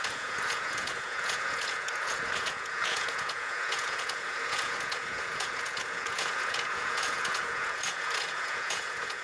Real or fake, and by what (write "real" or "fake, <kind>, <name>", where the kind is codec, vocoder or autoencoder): fake, vocoder, Vocos